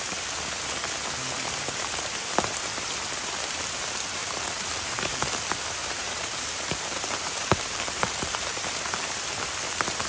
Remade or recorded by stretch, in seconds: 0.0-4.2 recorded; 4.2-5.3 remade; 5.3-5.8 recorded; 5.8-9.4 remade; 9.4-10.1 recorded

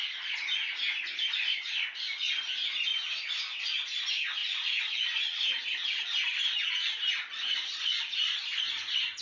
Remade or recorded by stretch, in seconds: 0.0-4.4 recorded; 4.4-5.2 remade; 5.2-9.2 recorded

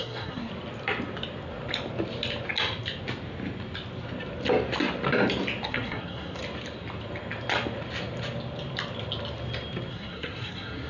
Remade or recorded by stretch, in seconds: 0.0-0.5 remade; 0.5-5.7 recorded; 5.7-6.4 remade; 6.4-9.9 recorded; 9.9-10.9 remade

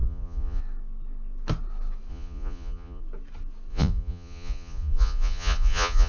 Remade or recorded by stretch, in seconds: 0.0-0.6 remade; 0.6-2.1 recorded; 2.1-3.0 remade; 3.0-3.7 recorded; 3.7-6.1 remade